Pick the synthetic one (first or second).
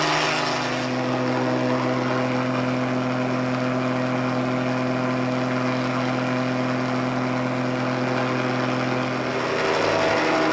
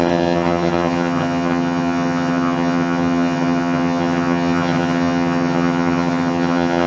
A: second